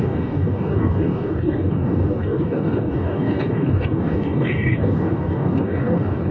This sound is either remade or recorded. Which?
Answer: remade